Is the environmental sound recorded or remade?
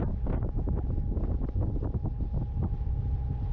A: recorded